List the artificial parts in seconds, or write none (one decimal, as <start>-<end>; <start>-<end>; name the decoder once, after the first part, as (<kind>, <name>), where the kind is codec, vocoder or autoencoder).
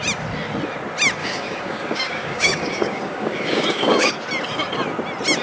1.2-4.1 (codec, DAC)